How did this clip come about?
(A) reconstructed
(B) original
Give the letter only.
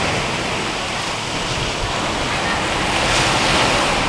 B